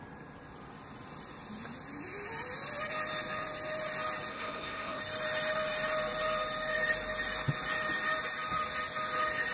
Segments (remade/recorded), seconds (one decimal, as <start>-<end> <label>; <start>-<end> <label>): 0.0-4.3 recorded; 4.3-5.0 remade; 5.0-9.5 recorded